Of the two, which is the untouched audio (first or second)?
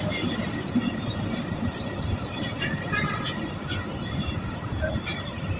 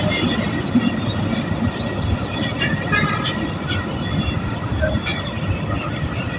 second